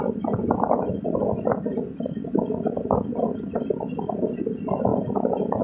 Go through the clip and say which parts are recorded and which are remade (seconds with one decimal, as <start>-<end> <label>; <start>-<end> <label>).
0.0-5.6 recorded